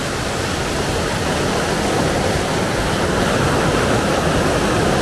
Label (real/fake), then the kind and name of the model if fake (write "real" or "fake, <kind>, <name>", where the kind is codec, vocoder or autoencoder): real